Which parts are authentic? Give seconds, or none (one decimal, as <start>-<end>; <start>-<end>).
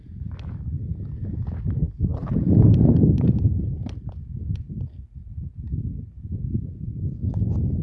0.0-1.8; 3.4-5.2; 5.8-7.8